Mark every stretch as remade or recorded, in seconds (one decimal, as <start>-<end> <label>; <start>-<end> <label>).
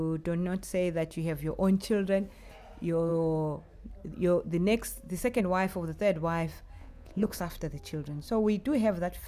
0.0-6.8 recorded; 6.8-7.4 remade; 7.4-9.3 recorded